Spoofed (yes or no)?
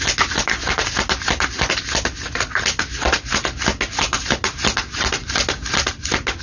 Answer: no